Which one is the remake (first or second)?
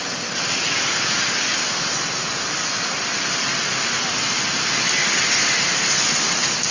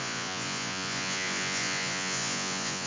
second